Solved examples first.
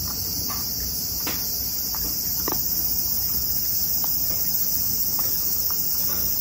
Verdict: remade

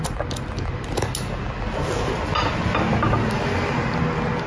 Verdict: recorded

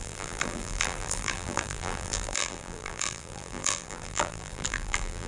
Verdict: remade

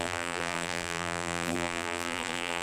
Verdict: remade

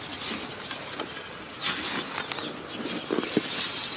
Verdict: recorded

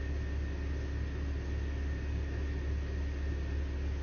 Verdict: recorded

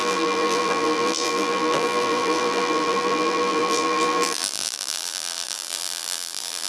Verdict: remade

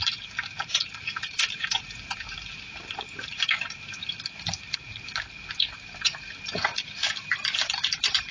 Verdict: remade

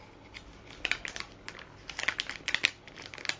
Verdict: recorded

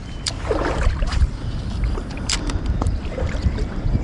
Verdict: remade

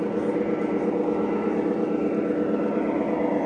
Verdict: recorded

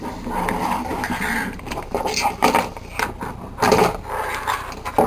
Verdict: recorded